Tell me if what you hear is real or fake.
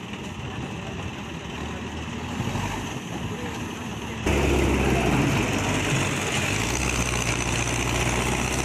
real